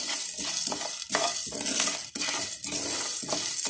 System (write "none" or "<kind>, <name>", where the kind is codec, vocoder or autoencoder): none